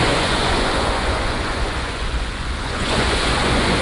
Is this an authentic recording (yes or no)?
no